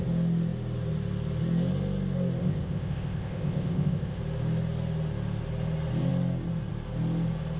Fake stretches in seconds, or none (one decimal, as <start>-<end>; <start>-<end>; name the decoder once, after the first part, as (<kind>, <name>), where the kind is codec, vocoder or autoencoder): 2.4-4.2 (codec, ZipCodec)

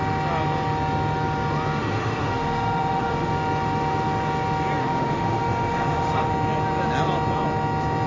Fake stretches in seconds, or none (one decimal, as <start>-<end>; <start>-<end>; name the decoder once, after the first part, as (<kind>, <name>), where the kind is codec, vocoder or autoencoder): 1.8-3.3 (autoencoder, DAC-VAE); 4.8-6.3

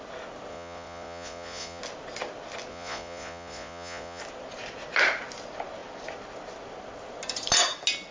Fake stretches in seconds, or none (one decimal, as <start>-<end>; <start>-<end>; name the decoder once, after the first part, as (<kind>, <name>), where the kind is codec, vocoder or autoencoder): 0.5-1.8 (vocoder, Vocos); 2.7-4.2

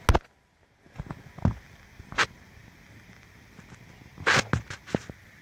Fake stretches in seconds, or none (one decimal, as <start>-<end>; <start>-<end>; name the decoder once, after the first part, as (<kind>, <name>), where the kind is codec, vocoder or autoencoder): none

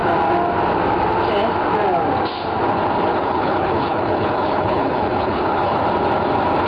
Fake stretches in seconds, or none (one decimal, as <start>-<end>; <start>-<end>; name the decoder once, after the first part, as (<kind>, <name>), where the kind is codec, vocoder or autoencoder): 3.1-5.8 (codec, HILCodec)

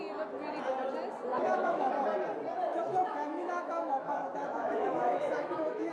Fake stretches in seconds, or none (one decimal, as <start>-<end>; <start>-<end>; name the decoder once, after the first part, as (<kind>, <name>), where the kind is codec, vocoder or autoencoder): 1.3-1.9 (autoencoder, DAC-VAE); 2.7-5.9

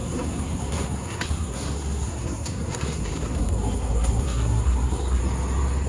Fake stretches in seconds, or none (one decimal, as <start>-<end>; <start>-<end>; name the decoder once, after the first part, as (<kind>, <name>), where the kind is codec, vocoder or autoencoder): 0.0-5.2 (codec, SNAC)

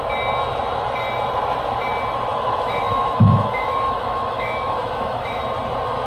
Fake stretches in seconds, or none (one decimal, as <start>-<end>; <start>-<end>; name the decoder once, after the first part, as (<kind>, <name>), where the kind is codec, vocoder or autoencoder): 2.3-5.4 (autoencoder, DAC-VAE)